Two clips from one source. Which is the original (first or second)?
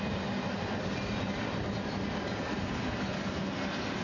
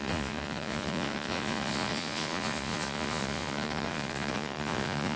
first